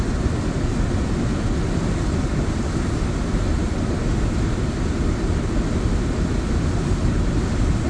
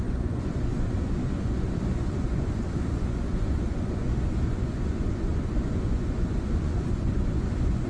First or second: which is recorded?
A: first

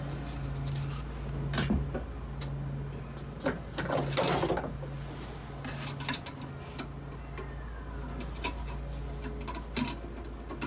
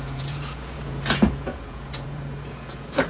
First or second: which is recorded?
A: first